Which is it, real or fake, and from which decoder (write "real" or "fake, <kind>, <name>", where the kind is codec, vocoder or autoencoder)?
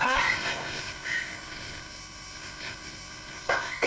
fake, codec, SNAC